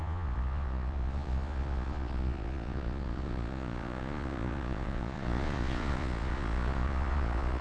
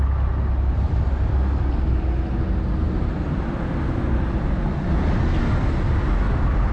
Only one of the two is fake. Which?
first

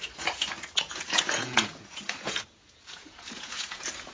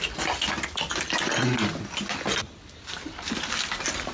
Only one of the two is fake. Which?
first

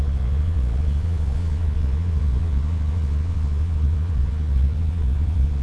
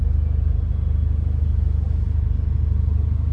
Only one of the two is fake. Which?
first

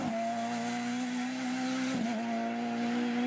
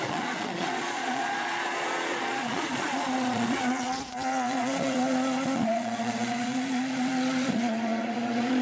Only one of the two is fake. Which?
second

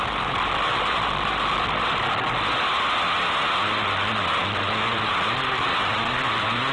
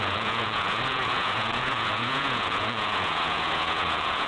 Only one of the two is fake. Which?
second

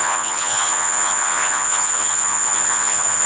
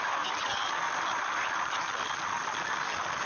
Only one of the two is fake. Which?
first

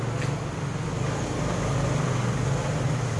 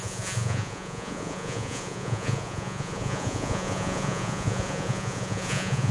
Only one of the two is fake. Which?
second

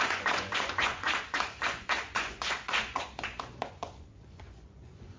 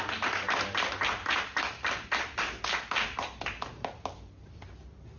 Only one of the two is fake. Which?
first